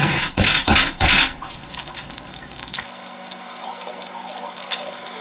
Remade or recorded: remade